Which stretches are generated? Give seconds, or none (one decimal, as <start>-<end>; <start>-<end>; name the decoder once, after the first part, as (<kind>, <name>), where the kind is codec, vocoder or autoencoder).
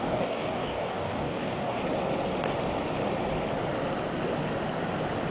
0.0-1.8 (codec, DAC)